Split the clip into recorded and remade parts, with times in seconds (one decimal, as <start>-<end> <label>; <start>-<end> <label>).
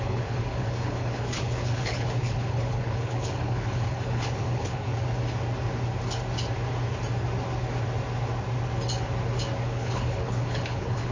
0.0-4.9 remade; 4.9-9.6 recorded; 9.6-11.1 remade